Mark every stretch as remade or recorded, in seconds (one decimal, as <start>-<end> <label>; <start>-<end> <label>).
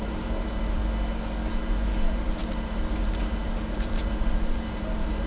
0.0-0.8 remade; 0.8-1.5 recorded; 1.5-5.3 remade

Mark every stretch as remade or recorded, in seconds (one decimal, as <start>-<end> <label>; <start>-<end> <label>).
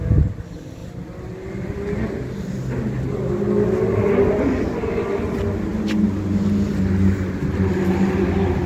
0.0-8.7 recorded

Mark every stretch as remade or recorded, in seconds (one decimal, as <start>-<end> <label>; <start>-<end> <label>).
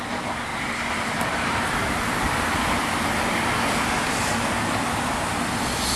0.0-6.0 recorded